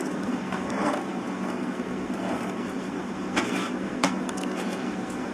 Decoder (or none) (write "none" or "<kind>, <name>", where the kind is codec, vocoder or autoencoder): codec, SNAC